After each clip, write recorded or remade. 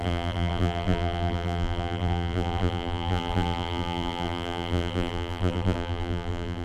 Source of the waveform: remade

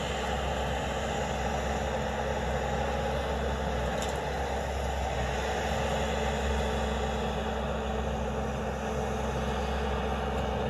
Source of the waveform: recorded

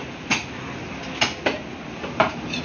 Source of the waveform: recorded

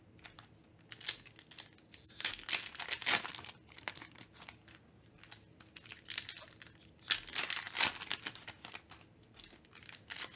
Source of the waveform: recorded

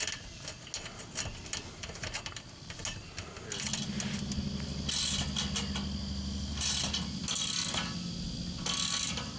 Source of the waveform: recorded